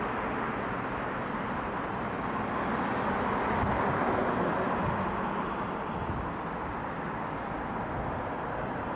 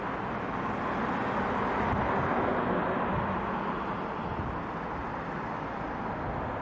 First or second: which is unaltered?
second